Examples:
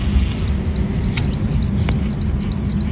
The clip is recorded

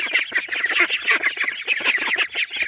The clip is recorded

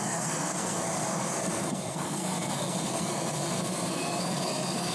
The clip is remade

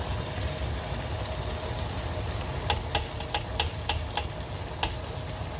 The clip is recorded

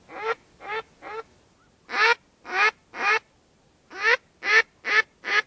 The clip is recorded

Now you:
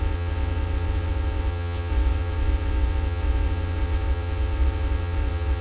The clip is remade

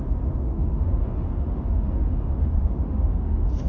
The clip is remade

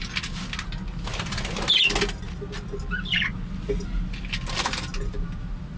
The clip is recorded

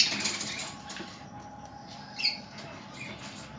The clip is recorded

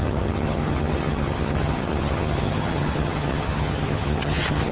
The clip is remade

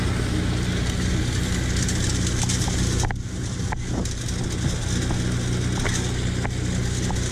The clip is recorded